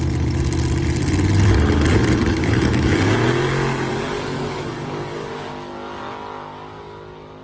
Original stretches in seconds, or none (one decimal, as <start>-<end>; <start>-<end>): 0.0-2.4; 2.9-3.9; 5.3-7.4